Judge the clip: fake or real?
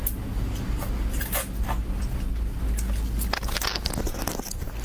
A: real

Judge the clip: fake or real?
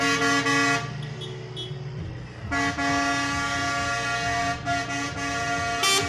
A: real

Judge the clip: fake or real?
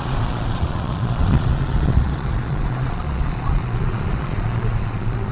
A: fake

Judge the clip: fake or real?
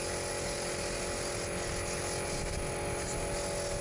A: real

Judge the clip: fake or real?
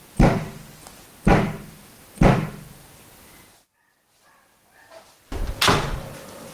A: real